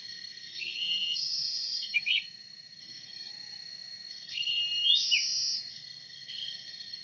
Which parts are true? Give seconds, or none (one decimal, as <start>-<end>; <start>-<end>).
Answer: 2.2-2.8; 3.3-4.1; 4.6-5.7